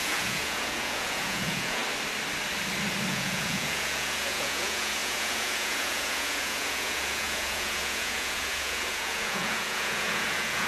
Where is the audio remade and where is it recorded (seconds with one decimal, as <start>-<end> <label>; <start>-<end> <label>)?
0.0-1.8 remade; 1.8-3.1 recorded; 3.1-10.7 remade